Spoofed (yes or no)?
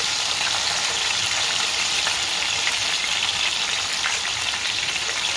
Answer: yes